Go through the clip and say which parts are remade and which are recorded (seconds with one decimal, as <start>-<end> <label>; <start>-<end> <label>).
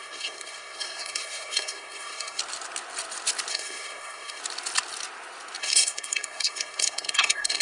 0.0-2.4 remade; 2.4-3.5 recorded; 3.5-4.4 remade; 4.4-5.6 recorded; 5.6-7.6 remade